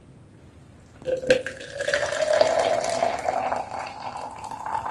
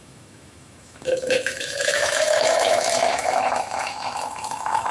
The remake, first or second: second